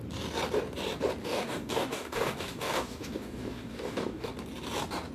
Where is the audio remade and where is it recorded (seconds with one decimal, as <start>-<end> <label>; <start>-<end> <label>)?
0.0-1.2 recorded; 1.2-4.3 remade; 4.3-5.1 recorded